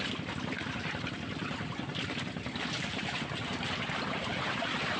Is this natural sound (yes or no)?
yes